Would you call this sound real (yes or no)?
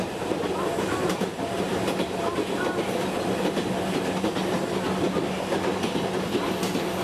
yes